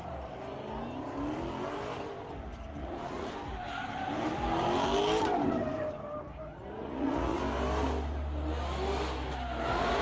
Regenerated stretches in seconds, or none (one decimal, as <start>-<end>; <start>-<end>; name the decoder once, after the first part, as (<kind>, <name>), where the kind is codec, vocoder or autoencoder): 2.8-3.3 (vocoder, Vocos); 6.8-7.4